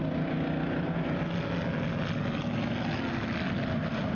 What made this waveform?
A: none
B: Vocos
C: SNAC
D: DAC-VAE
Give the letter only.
A